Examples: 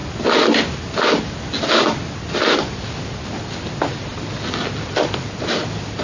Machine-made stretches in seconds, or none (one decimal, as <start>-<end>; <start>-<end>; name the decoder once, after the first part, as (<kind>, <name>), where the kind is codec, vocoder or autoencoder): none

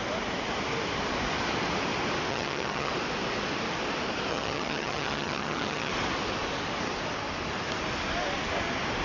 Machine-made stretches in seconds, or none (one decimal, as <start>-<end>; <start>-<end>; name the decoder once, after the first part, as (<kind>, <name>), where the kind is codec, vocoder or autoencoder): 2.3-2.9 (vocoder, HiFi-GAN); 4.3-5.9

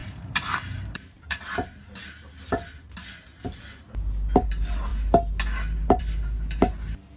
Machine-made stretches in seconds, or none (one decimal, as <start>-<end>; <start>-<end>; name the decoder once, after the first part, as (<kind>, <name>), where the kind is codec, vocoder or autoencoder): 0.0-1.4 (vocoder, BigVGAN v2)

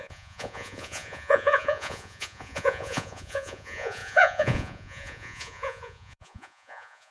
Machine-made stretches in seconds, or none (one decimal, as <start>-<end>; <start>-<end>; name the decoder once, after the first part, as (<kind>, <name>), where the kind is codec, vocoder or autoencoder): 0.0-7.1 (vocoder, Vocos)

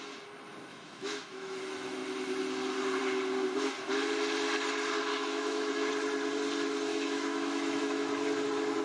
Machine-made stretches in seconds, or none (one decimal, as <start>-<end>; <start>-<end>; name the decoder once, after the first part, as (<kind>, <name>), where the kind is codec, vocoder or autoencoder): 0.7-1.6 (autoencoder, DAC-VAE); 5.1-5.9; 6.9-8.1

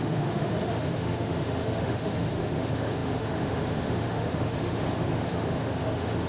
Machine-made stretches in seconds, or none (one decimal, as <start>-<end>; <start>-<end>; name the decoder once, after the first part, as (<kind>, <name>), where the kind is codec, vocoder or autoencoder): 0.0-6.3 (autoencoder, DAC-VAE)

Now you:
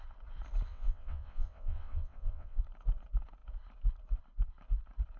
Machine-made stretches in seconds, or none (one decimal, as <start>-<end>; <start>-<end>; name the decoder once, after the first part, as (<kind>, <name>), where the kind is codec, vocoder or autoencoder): 0.7-2.6 (vocoder, WaveNeXt)

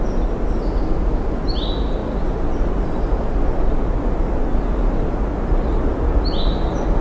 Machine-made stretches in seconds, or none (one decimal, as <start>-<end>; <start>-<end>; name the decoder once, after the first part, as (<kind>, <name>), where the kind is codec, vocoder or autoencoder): none